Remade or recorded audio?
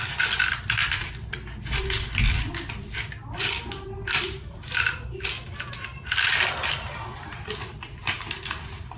recorded